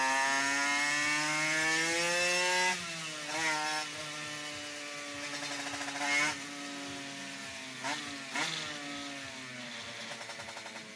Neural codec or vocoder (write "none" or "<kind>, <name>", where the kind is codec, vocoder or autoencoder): none